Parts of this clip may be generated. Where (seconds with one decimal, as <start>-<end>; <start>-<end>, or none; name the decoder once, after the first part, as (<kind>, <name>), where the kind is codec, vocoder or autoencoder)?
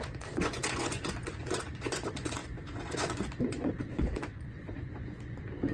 0.0-5.7 (vocoder, Vocos)